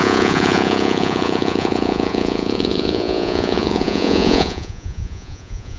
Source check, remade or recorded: remade